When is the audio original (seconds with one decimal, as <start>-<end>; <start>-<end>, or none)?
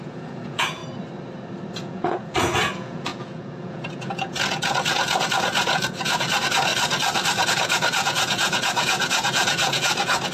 0.8-1.8; 6.7-7.5